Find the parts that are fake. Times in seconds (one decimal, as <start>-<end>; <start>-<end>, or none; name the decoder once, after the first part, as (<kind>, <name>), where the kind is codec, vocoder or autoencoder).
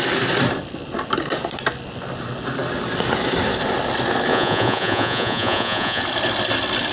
4.3-6.0 (vocoder, Vocos)